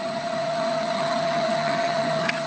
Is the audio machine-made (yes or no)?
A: yes